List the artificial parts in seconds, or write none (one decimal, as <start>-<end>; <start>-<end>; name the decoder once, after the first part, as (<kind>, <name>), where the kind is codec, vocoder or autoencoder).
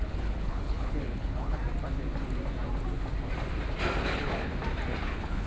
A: 0.0-1.6 (codec, HILCodec); 4.0-4.5; 5.0-5.5